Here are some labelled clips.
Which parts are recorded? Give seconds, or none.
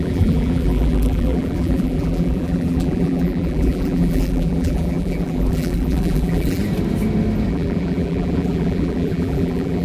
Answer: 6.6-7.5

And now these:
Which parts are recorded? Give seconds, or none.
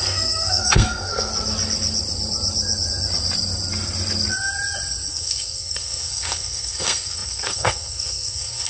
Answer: 1.3-5.1